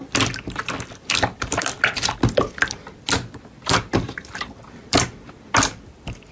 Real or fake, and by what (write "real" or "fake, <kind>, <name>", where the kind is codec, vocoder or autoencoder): fake, vocoder, BigVGAN v2